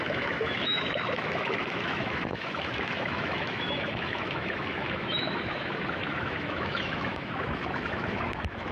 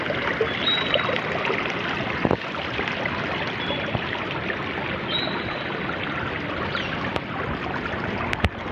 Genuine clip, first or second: second